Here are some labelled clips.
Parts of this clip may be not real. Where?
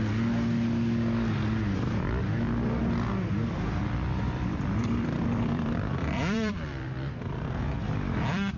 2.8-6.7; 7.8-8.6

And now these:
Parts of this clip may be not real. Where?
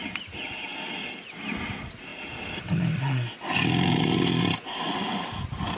none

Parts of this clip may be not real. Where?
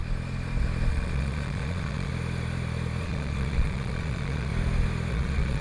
0.9-2.1; 3.0-4.5; 5.1-5.6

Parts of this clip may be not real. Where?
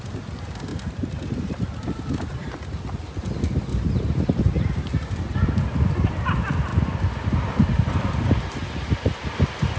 0.7-2.0; 3.7-4.4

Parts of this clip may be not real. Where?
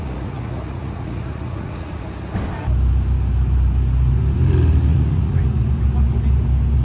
0.0-2.0; 4.9-5.5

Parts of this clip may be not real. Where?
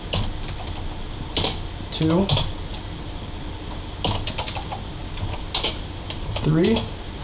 none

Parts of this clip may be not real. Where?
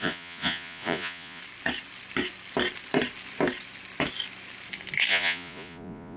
0.0-1.4; 5.1-6.2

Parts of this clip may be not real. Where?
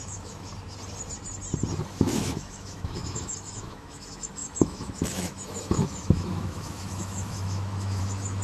0.0-0.5; 1.9-8.4